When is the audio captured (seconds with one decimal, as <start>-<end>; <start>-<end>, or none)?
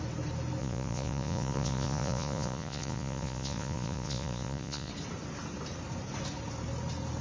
0.0-0.6; 4.9-7.2